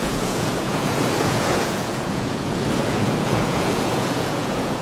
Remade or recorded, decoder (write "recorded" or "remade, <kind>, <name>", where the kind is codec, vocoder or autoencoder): remade, vocoder, Vocos